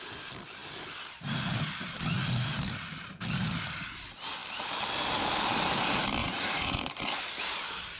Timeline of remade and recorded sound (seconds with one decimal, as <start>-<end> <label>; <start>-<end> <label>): 0.0-6.2 recorded; 6.2-6.9 remade; 6.9-8.0 recorded